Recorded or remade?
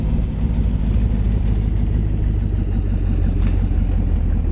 recorded